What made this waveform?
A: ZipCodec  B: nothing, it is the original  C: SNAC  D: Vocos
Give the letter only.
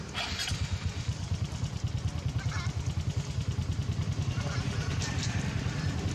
B